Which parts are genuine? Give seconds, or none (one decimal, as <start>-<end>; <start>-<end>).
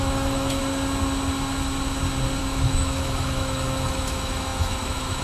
0.6-2.4